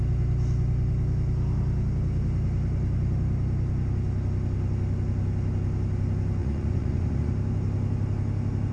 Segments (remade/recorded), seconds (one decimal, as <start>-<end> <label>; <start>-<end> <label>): 0.0-6.4 recorded; 6.4-7.3 remade; 7.3-8.7 recorded